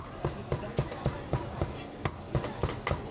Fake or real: real